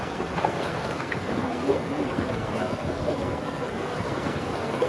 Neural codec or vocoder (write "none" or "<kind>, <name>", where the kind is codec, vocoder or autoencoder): codec, SNAC